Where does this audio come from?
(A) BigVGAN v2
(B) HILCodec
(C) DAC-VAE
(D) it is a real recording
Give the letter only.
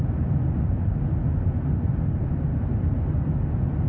D